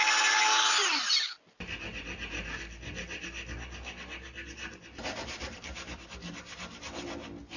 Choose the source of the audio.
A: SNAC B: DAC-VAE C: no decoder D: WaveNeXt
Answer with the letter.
C